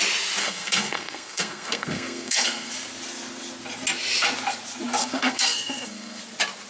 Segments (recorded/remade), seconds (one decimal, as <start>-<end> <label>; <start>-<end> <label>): 0.0-0.4 recorded; 0.4-2.7 remade; 2.7-5.0 recorded; 5.0-6.2 remade; 6.2-6.7 recorded

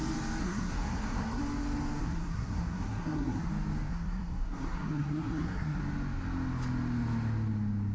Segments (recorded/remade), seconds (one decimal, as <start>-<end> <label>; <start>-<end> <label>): 0.0-0.4 recorded; 0.4-1.4 remade; 1.4-2.0 recorded; 2.0-3.5 remade; 3.5-3.9 recorded; 3.9-5.8 remade; 5.8-7.9 recorded

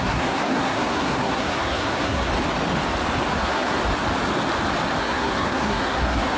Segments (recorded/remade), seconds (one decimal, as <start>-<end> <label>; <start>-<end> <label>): 0.0-2.3 remade; 2.3-3.3 recorded; 3.3-3.8 remade; 3.8-5.0 recorded; 5.0-6.4 remade